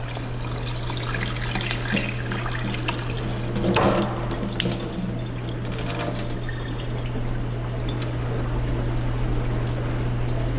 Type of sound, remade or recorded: recorded